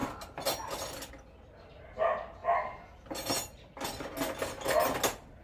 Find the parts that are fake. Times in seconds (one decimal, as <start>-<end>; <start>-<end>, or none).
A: none